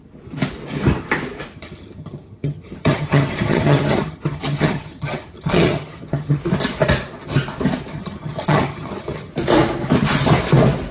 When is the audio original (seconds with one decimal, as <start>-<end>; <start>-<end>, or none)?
0.0-1.5; 6.4-7.9; 9.3-10.9